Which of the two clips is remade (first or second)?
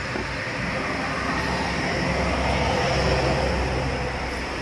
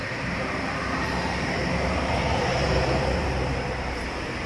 second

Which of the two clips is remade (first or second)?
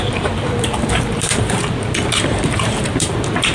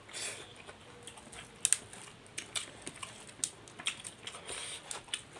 first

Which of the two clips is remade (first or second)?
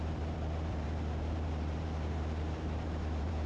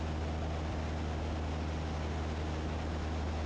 first